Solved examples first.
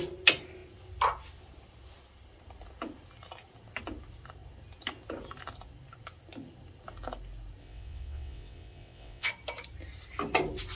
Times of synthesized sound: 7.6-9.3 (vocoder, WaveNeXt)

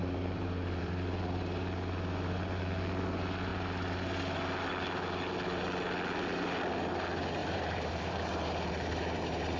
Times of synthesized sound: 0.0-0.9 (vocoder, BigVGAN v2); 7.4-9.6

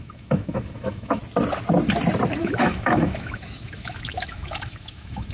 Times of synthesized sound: 0.0-1.2 (autoencoder, DAC-VAE); 2.4-5.3

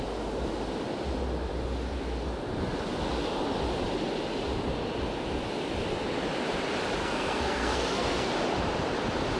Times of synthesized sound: 7.0-8.3 (codec, SNAC)